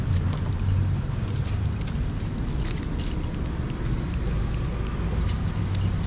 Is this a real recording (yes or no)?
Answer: yes